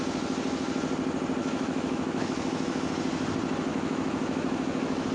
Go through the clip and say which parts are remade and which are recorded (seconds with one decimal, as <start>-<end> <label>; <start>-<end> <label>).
0.0-1.4 recorded; 1.4-2.9 remade; 2.9-3.7 recorded; 3.7-5.1 remade